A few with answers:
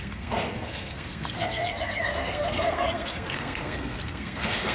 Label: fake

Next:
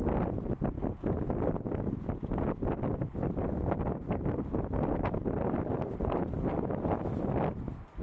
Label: real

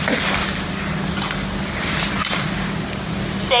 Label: real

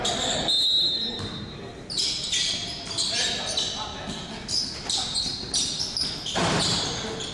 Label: real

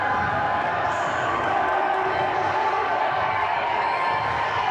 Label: fake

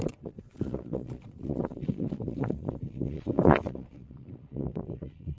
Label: fake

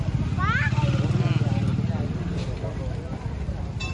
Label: real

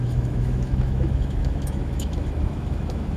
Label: fake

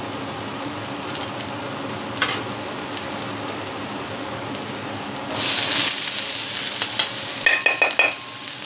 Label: real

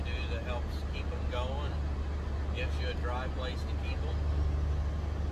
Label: real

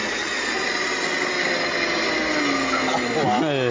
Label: real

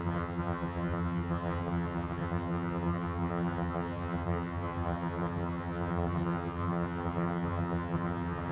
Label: fake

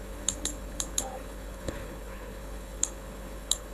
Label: fake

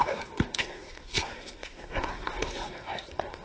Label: fake